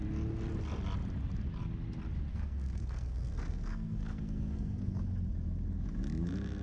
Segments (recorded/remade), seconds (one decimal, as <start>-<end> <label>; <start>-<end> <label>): 0.0-2.3 recorded; 2.3-5.0 remade; 5.0-6.6 recorded